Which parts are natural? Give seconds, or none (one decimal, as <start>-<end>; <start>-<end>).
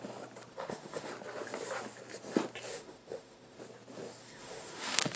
0.0-0.5; 1.1-2.7; 3.6-4.2